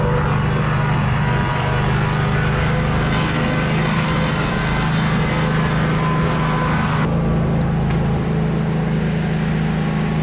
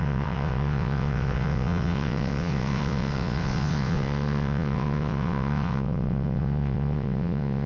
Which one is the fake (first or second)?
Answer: second